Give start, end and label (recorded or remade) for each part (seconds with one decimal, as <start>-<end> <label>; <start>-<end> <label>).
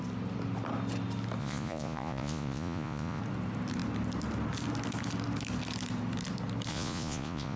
0.0-1.4 recorded; 1.4-3.2 remade; 3.2-6.7 recorded; 6.7-7.6 remade